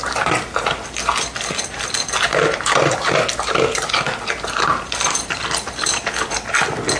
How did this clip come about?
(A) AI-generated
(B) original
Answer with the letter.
B